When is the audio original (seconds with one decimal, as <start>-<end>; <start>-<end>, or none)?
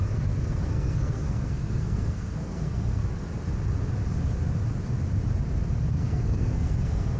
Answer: 3.0-5.9